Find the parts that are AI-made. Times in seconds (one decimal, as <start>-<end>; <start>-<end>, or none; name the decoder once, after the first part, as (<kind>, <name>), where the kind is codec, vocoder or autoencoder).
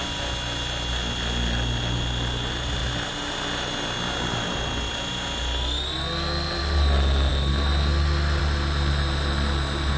none